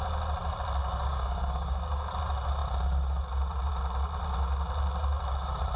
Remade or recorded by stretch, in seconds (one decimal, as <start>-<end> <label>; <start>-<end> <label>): 0.0-0.8 recorded; 0.8-2.1 remade; 2.1-5.8 recorded

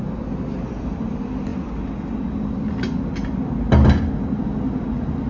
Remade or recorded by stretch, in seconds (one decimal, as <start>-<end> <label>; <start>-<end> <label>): 0.0-5.3 recorded

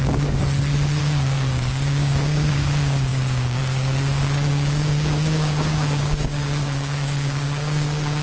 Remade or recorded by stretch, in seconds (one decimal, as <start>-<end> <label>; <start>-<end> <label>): 0.0-0.4 remade; 0.4-1.0 recorded; 1.0-8.2 remade

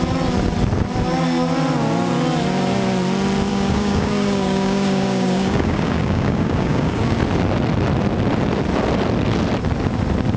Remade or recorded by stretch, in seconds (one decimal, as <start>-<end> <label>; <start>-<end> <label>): 0.0-3.5 recorded; 3.5-7.2 remade; 7.2-10.4 recorded

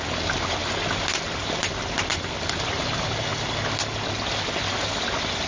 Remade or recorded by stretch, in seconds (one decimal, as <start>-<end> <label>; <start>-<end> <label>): 0.0-5.5 recorded

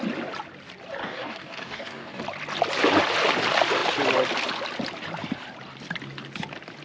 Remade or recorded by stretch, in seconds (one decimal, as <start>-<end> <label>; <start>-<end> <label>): 0.0-1.0 recorded; 1.0-2.2 remade; 2.2-6.8 recorded

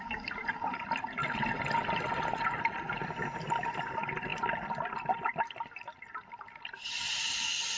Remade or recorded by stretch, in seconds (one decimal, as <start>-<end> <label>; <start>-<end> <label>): 0.0-7.8 recorded

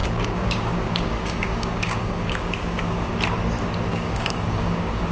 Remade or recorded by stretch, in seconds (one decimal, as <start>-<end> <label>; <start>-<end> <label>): 0.0-3.1 remade; 3.1-3.9 recorded; 3.9-5.1 remade